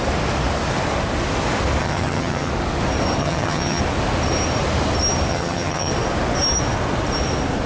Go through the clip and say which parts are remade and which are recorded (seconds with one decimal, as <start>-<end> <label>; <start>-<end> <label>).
0.0-1.8 recorded; 1.8-2.5 remade; 2.5-3.2 recorded; 3.2-3.8 remade; 3.8-5.3 recorded; 5.3-5.9 remade; 5.9-7.7 recorded